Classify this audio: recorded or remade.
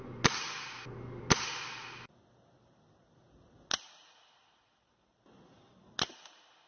recorded